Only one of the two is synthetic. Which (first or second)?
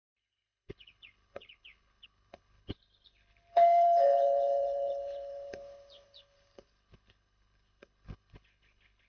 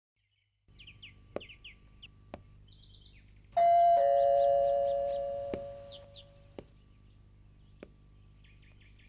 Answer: first